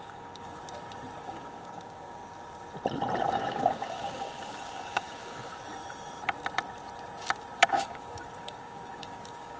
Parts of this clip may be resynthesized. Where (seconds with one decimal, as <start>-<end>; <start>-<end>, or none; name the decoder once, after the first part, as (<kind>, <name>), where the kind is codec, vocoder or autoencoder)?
0.0-0.6 (codec, DAC); 1.2-2.2; 3.3-5.5; 7.7-9.6